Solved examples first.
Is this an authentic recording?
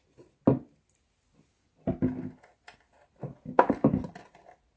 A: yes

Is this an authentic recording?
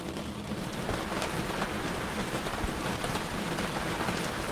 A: yes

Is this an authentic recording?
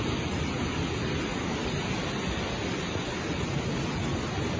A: yes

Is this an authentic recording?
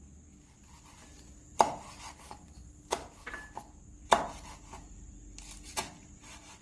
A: yes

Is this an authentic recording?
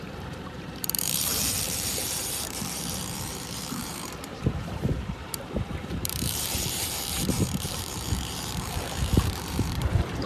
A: no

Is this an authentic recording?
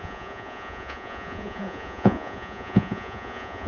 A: no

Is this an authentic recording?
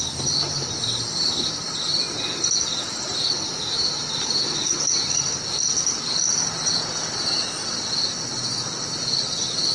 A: yes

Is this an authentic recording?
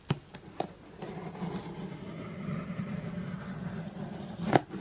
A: yes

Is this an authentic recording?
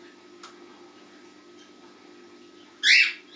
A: yes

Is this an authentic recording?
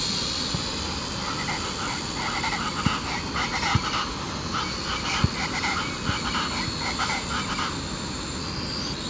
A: yes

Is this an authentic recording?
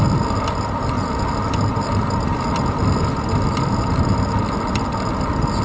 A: yes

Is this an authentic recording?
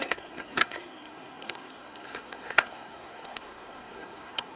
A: no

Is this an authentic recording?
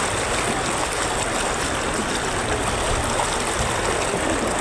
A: yes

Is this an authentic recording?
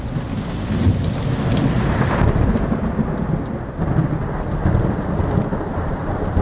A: yes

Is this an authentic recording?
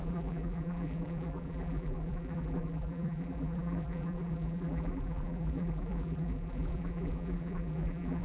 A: no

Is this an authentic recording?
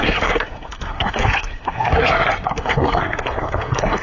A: no